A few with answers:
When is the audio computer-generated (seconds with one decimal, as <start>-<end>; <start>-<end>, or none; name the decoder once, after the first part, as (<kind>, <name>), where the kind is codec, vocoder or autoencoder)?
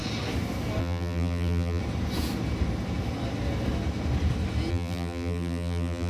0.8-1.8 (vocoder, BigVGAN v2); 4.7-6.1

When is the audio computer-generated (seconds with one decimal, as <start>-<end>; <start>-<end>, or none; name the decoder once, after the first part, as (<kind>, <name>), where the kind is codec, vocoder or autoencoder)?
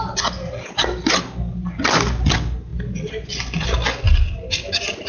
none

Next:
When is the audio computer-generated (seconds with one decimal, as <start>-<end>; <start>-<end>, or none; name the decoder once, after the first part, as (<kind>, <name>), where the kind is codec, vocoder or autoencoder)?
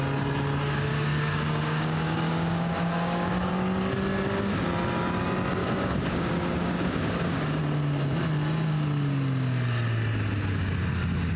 0.9-3.5 (codec, DAC); 5.6-7.6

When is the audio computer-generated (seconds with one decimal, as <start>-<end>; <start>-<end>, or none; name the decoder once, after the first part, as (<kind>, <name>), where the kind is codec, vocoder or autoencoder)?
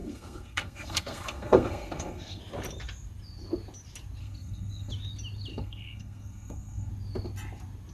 0.0-2.4 (codec, SNAC); 4.2-4.9; 5.5-6.9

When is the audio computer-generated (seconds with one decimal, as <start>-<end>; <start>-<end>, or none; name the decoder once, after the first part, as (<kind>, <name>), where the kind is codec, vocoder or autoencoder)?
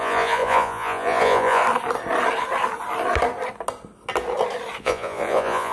0.0-1.6 (vocoder, Vocos); 4.8-5.7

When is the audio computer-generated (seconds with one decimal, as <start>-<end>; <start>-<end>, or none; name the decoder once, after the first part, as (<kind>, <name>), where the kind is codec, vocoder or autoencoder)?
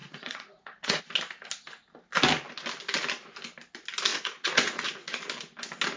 0.0-1.0 (vocoder, Vocos); 4.1-5.2